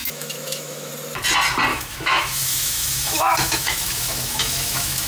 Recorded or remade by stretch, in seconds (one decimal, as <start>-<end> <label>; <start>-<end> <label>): 0.0-0.9 remade; 0.9-1.7 recorded; 1.7-5.1 remade